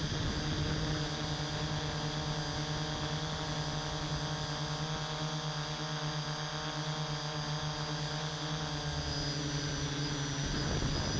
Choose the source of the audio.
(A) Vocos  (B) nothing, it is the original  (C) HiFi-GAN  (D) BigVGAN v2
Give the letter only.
B